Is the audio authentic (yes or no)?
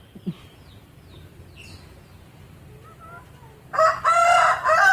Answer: yes